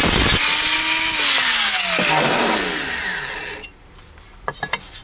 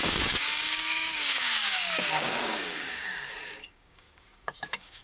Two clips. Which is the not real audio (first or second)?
second